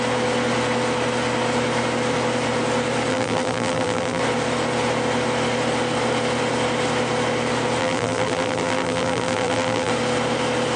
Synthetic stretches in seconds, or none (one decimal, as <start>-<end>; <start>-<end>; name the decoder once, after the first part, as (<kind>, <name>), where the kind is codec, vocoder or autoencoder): 3.1-4.2 (vocoder, BigVGAN v2); 7.8-9.9

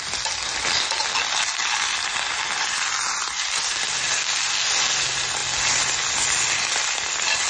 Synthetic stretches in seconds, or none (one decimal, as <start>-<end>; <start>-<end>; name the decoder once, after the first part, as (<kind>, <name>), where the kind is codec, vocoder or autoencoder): none